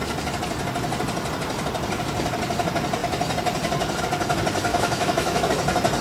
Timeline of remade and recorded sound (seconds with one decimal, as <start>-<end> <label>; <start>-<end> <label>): 0.0-4.7 recorded; 4.7-5.5 remade; 5.5-6.0 recorded